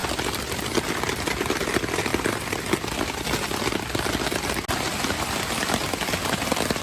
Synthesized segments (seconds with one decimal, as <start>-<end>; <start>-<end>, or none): none

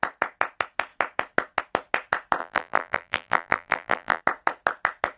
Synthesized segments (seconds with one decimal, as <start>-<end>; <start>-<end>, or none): 2.4-4.2

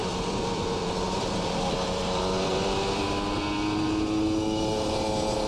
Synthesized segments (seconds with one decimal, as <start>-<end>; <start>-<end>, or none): 0.0-3.0

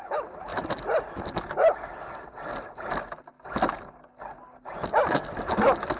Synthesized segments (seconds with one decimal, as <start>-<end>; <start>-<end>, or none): none

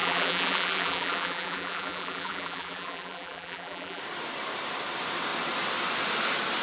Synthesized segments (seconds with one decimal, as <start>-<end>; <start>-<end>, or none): 0.0-4.0

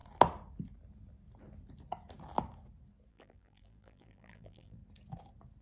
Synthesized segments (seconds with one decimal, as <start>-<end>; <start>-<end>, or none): 3.1-4.8

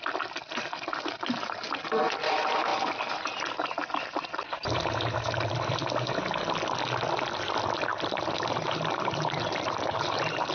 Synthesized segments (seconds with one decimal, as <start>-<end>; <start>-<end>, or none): 7.9-10.5